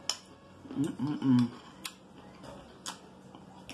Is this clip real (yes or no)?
yes